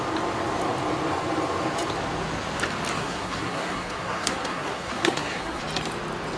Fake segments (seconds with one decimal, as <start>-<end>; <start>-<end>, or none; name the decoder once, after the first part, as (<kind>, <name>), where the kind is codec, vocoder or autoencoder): 2.9-5.6 (codec, SNAC)